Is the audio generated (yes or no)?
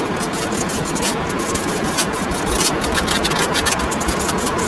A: no